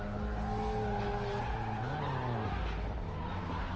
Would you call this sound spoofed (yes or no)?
no